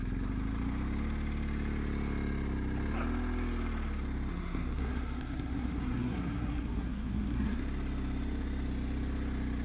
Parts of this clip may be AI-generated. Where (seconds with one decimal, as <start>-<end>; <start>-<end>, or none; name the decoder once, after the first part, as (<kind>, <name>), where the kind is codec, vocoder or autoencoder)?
4.3-7.6 (codec, SNAC)